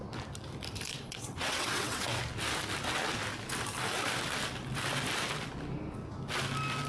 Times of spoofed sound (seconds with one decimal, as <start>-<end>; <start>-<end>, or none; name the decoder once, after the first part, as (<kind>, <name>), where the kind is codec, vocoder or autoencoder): 0.9-2.2 (vocoder, WaveNeXt)